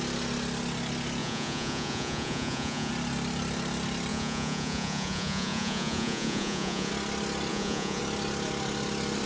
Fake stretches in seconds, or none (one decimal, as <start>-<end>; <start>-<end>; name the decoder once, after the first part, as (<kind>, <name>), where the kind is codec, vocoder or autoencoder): 1.2-2.9 (vocoder, Vocos); 4.1-6.9; 7.5-8.0